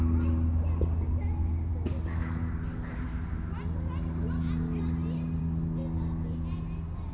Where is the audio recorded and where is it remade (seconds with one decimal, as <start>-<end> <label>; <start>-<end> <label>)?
0.0-7.1 recorded